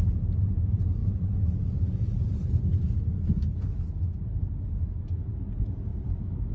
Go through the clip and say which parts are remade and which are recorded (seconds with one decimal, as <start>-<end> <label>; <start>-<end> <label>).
0.0-6.5 recorded